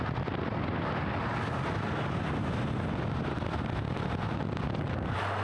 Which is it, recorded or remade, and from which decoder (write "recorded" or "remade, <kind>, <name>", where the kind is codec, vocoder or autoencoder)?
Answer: recorded